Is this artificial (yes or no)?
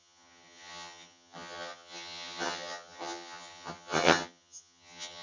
yes